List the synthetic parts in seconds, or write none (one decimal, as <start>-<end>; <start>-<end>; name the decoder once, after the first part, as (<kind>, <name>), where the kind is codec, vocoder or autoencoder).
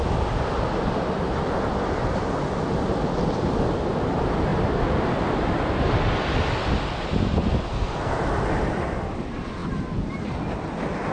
7.7-8.2 (codec, SNAC)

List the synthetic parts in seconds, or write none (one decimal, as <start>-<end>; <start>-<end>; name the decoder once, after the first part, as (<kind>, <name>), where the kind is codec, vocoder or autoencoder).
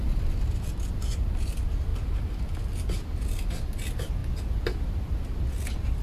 none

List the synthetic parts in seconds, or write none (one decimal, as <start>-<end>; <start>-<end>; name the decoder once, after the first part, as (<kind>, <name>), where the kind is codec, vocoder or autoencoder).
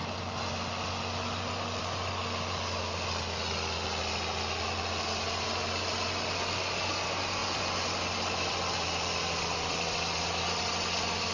0.0-1.8 (vocoder, BigVGAN v2); 7.4-10.6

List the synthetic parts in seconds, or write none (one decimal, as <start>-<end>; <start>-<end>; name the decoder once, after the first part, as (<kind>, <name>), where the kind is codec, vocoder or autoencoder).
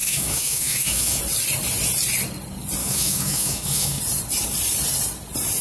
0.0-1.2 (autoencoder, DAC-VAE); 2.8-4.0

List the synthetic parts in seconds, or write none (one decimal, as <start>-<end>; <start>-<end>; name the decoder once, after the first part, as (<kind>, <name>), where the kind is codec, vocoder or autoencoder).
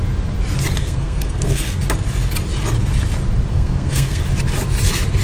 0.8-1.8 (codec, SNAC); 3.5-4.2